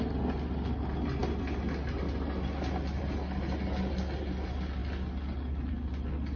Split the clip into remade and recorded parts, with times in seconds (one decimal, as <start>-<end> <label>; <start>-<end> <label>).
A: 0.0-6.4 recorded